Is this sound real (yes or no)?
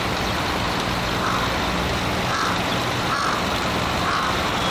yes